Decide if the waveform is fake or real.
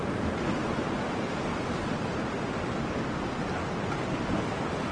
real